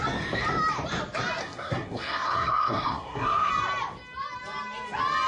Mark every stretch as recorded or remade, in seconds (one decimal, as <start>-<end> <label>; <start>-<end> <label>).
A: 0.0-1.4 recorded; 1.4-3.5 remade; 3.5-5.3 recorded